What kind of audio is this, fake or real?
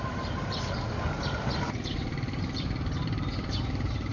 fake